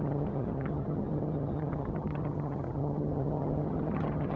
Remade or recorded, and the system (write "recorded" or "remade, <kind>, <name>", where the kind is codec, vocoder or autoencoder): remade, vocoder, HiFi-GAN